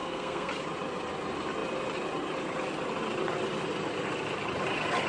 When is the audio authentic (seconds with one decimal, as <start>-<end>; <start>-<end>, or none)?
0.5-5.1